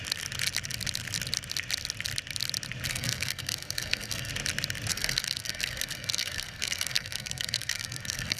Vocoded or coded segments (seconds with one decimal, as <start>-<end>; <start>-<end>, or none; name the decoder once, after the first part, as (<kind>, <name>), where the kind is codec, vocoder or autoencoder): 2.9-4.3 (codec, SNAC); 4.9-8.4

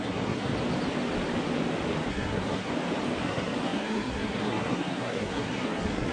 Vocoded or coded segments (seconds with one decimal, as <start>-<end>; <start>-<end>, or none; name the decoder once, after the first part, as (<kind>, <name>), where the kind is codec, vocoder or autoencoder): 0.0-0.5 (codec, SNAC); 2.1-2.7; 3.2-6.1

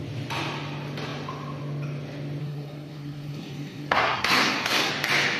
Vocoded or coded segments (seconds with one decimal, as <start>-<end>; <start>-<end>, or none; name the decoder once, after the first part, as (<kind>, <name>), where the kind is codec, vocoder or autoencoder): 2.4-4.9 (codec, SNAC)

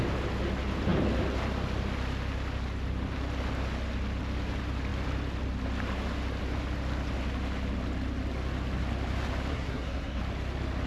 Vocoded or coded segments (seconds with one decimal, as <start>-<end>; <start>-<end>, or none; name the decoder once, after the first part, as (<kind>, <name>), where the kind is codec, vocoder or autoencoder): 9.5-10.2 (codec, SNAC)

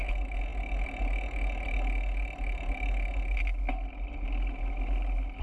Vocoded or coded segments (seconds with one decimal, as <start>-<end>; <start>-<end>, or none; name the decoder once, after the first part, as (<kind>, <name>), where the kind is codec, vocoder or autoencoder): none

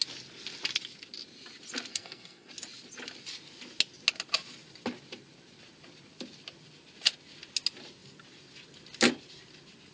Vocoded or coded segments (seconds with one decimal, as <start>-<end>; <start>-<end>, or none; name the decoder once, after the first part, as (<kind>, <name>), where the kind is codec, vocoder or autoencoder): 1.9-2.5 (codec, SNAC)

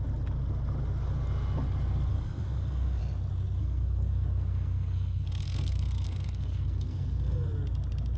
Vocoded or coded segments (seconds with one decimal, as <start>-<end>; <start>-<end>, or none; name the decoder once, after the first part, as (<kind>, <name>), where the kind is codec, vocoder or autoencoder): 2.1-3.0 (codec, SNAC); 3.6-7.5

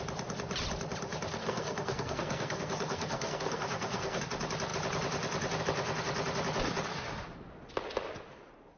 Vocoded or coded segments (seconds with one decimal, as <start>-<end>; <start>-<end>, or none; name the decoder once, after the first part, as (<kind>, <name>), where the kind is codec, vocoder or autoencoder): 1.4-4.2 (codec, SNAC)